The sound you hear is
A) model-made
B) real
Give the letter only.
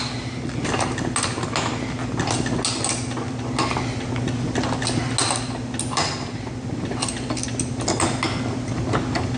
B